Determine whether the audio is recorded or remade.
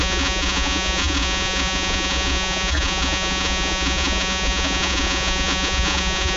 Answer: remade